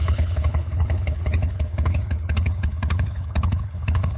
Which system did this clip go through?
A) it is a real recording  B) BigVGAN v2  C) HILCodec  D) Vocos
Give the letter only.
C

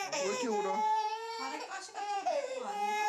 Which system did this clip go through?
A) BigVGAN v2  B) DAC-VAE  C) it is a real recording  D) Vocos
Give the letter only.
D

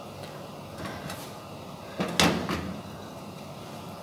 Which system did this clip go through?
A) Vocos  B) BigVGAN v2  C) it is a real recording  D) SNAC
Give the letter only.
C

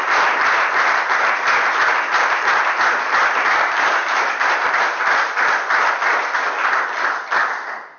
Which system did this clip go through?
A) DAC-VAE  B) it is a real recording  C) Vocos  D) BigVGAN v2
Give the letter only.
B